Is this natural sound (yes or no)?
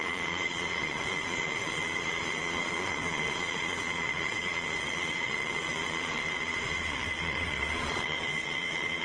no